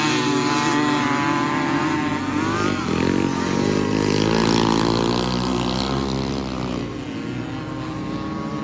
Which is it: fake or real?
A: real